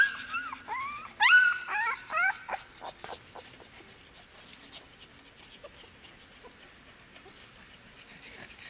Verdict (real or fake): fake